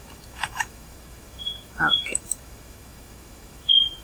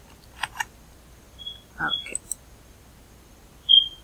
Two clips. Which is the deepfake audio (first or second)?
first